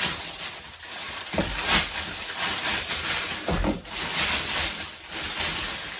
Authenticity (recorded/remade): recorded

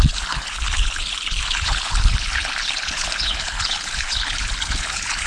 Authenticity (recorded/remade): remade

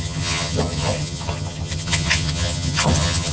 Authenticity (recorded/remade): remade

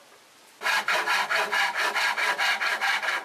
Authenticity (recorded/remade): recorded